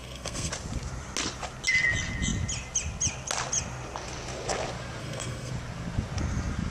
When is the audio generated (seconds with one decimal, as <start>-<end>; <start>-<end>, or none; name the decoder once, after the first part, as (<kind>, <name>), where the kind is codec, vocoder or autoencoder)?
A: 0.0-0.5 (codec, SNAC); 5.0-5.5